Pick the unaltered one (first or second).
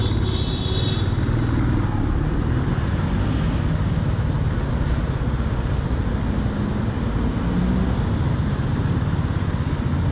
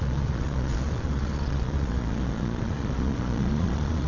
first